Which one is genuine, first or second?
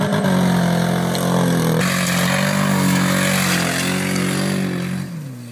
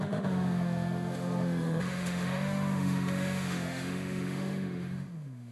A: first